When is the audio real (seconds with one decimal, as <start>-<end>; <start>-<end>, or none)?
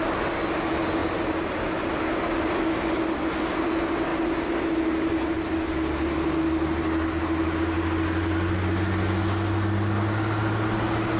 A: 0.0-1.0; 1.6-11.2